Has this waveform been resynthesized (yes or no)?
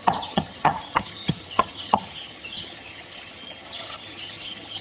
yes